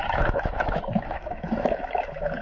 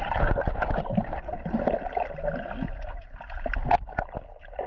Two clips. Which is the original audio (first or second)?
second